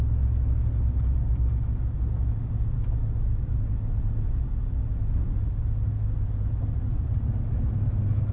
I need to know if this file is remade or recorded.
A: recorded